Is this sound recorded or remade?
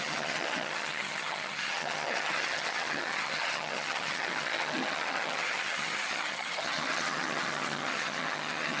remade